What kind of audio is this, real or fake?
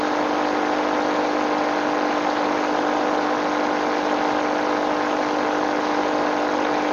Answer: real